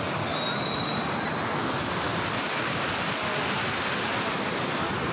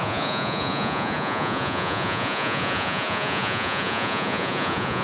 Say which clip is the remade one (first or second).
second